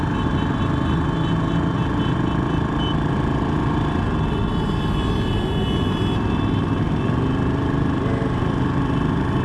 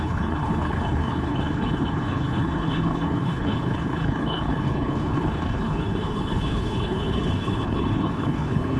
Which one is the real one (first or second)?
first